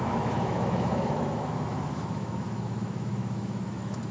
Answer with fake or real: fake